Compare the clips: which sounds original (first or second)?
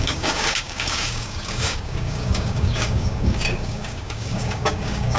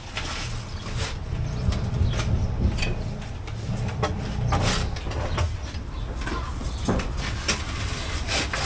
second